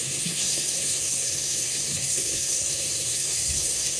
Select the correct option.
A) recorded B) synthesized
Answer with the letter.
B